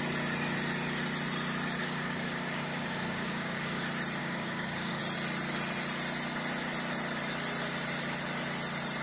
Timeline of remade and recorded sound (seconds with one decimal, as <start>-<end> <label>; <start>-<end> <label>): 0.0-1.8 recorded; 1.8-3.8 remade; 3.8-4.2 recorded; 4.2-5.0 remade; 5.0-9.0 recorded